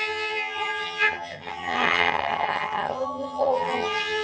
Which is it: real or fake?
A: fake